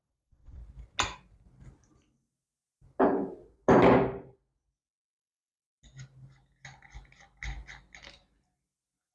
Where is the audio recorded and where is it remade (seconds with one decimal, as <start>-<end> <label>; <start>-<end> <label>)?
0.0-0.6 remade; 0.6-5.1 recorded; 5.1-5.6 remade; 5.6-9.1 recorded